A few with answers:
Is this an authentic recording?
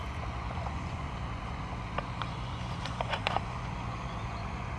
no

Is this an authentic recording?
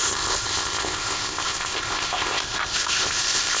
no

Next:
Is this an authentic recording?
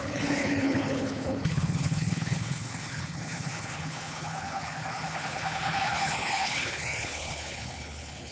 no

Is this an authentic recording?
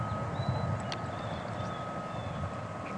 yes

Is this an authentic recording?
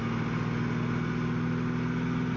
yes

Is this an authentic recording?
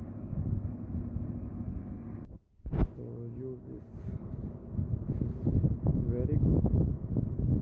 yes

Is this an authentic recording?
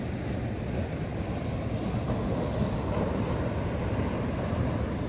yes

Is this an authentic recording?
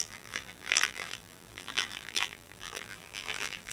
no